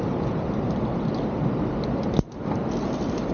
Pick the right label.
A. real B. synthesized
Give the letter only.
A